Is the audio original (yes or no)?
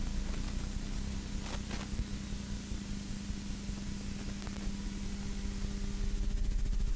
yes